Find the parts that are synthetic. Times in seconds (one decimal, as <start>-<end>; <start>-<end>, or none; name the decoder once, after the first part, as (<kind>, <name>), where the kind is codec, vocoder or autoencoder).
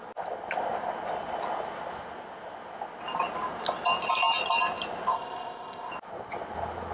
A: 5.1-5.9 (codec, ZipCodec)